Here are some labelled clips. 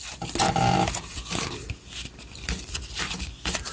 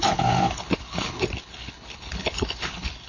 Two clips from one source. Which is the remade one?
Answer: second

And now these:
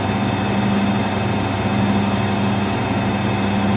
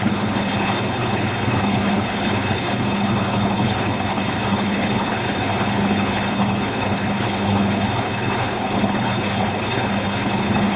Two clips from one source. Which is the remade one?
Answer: second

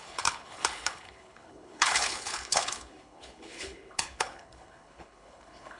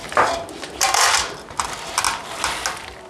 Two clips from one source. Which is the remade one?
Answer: first